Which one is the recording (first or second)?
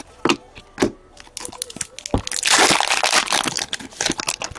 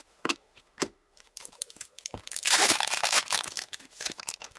first